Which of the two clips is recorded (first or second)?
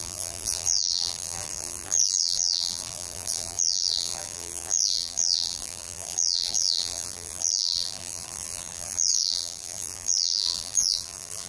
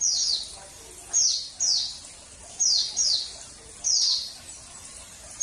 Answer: second